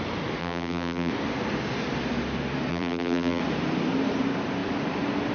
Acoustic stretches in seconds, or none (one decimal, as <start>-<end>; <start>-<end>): 0.0-0.4; 1.1-2.7; 3.4-5.3